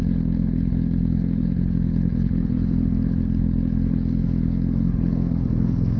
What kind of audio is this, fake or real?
fake